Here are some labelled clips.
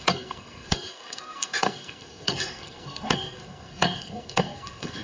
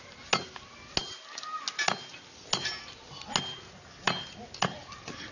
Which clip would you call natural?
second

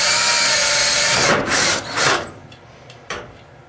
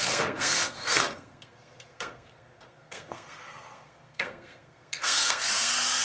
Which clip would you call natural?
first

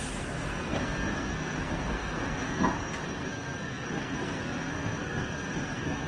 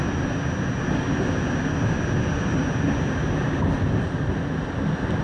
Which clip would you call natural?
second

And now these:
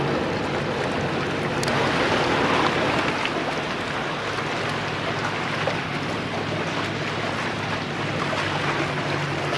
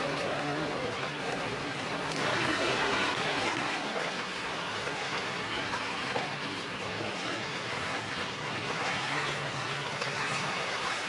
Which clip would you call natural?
first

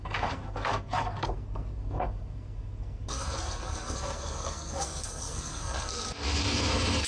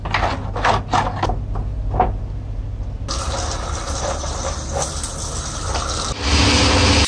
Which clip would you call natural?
second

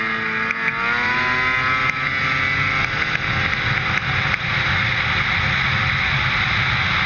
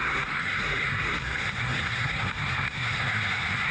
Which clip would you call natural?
first